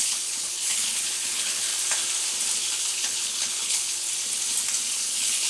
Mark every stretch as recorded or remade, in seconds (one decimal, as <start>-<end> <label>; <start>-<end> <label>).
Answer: 0.0-1.7 remade; 1.7-2.8 recorded; 2.8-4.1 remade; 4.1-4.9 recorded; 4.9-5.5 remade